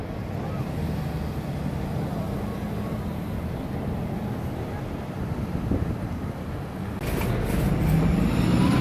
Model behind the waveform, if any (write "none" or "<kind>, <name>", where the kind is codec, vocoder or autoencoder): none